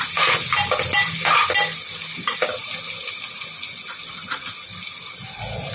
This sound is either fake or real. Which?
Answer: real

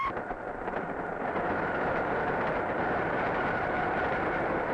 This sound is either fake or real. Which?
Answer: fake